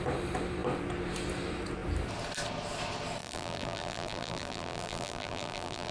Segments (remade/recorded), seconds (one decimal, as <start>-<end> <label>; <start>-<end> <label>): 0.0-3.2 recorded; 3.2-5.9 remade